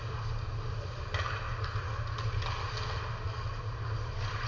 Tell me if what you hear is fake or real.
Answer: real